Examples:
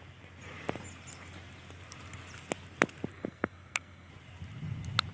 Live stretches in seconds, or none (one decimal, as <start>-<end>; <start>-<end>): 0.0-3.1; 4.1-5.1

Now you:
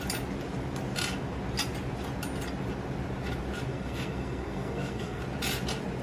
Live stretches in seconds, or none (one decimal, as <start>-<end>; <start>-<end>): 0.0-3.7; 5.2-6.0

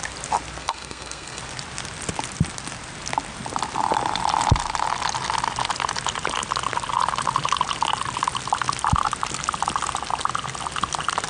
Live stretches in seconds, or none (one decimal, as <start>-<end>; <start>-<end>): 0.0-0.6; 1.4-11.3

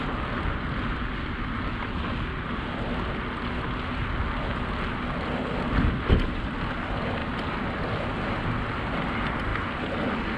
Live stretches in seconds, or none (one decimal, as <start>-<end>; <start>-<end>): 0.0-10.4

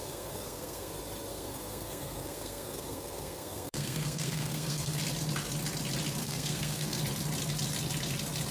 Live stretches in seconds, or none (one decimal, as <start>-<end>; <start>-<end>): 0.9-1.3; 5.0-6.2; 7.0-8.5